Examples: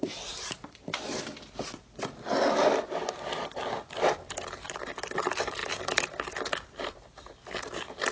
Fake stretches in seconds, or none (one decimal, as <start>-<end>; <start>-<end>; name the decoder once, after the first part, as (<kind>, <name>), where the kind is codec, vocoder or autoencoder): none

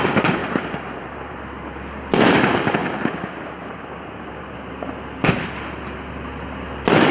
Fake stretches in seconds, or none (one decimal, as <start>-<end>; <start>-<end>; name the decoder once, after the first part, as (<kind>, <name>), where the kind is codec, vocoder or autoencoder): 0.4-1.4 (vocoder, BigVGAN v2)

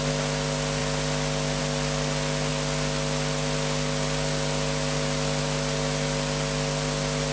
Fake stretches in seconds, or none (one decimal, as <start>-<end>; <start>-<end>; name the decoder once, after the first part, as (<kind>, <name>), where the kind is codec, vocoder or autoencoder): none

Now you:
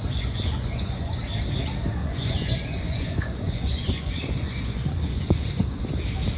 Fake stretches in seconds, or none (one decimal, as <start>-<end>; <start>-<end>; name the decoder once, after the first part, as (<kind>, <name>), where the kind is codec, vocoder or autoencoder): 0.0-1.2 (vocoder, Vocos); 2.0-5.8

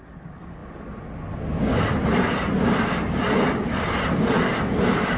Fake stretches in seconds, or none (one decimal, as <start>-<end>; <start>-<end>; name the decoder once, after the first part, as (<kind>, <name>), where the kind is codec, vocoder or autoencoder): none

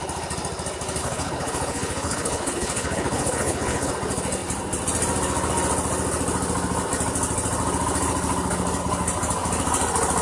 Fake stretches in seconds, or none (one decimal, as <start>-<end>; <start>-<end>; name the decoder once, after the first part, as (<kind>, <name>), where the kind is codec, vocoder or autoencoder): 1.0-3.9 (codec, HILCodec)